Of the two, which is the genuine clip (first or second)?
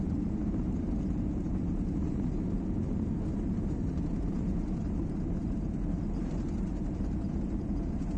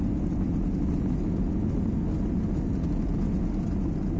second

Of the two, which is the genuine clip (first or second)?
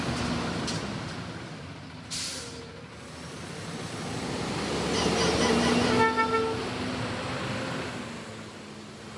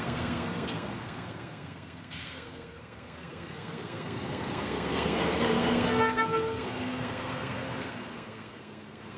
first